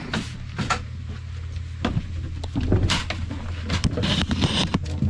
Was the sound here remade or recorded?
recorded